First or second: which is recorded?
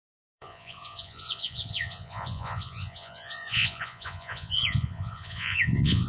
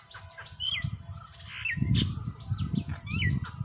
second